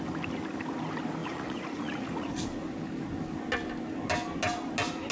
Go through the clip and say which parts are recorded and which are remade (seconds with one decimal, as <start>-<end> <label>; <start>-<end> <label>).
0.0-1.2 recorded; 1.2-2.3 remade; 2.3-5.1 recorded